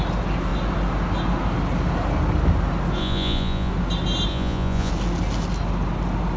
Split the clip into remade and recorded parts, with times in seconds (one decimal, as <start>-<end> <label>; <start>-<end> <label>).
0.0-3.0 recorded; 3.0-3.7 remade; 3.7-4.3 recorded; 4.3-4.9 remade; 4.9-6.4 recorded